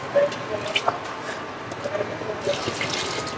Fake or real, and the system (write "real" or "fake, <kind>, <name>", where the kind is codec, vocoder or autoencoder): real